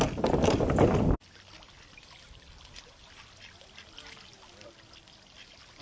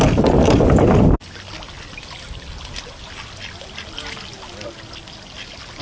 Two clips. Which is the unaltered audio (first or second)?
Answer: second